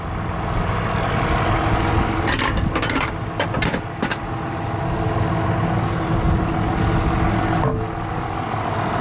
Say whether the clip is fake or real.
real